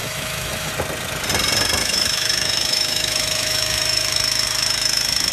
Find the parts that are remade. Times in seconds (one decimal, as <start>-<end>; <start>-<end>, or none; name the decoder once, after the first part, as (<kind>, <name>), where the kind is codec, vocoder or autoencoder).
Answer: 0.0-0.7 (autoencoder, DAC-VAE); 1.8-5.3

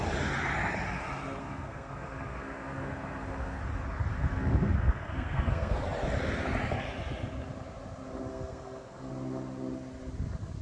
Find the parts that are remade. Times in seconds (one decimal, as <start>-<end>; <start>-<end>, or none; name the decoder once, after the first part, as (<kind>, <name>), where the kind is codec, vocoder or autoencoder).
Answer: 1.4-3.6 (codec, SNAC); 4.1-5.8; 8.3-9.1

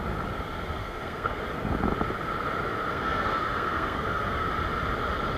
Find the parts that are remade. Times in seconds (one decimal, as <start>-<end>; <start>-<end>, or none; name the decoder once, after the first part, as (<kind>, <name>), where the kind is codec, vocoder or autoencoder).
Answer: 0.8-1.4 (codec, SNAC); 2.9-4.5

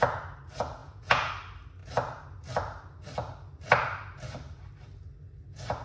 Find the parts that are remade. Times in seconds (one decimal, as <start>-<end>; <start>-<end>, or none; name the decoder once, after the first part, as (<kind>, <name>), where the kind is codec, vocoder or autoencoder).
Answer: 0.8-1.3 (vocoder, Vocos)

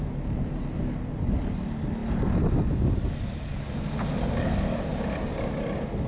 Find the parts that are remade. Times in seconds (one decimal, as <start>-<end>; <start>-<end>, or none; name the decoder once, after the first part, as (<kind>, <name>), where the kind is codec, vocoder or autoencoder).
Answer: none

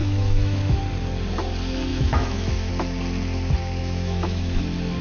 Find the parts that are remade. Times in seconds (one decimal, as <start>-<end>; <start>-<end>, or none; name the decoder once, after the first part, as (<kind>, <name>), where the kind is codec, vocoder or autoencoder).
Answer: 0.0-0.8 (autoencoder, DAC-VAE); 1.9-2.7; 3.8-4.6